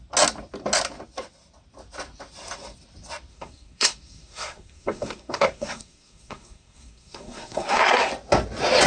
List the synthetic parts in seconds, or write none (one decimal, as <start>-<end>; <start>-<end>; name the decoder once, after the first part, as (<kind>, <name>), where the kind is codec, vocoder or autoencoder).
3.3-8.1 (codec, SNAC)